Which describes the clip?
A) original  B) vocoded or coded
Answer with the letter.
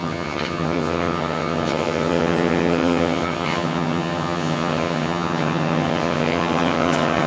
B